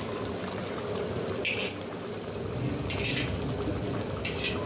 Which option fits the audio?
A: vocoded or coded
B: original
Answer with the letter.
B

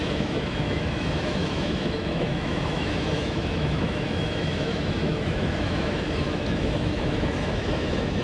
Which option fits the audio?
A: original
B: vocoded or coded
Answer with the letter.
B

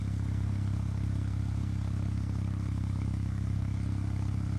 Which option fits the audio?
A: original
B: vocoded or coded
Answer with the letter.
B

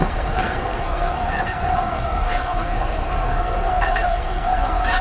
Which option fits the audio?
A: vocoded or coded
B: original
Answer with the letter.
A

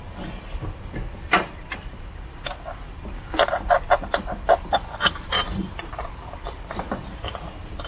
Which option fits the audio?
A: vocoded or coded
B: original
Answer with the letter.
A